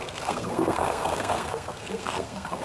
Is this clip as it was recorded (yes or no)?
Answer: no